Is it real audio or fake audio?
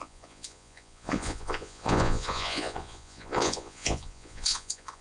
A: fake